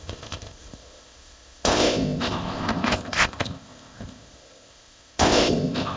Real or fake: fake